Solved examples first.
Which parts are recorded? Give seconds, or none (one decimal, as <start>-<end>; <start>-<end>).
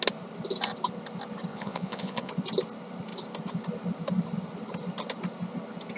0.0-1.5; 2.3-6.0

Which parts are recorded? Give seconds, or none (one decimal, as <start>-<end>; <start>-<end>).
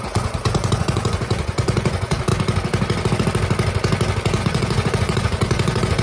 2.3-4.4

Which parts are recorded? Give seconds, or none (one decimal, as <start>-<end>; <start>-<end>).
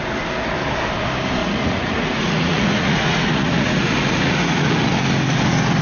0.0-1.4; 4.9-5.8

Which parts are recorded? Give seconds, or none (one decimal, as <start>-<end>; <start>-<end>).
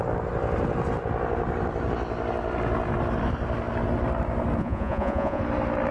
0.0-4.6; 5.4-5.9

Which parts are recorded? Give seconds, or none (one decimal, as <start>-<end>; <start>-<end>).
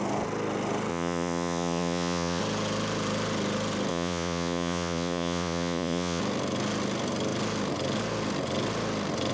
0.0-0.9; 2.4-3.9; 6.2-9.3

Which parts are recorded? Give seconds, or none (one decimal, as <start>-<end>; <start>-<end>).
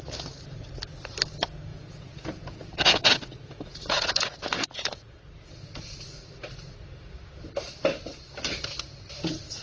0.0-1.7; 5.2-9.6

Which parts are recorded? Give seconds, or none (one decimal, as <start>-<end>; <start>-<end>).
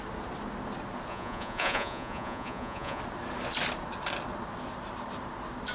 0.0-1.1; 3.0-5.7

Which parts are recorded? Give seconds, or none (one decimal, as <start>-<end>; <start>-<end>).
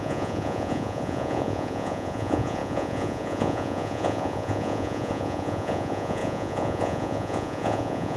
none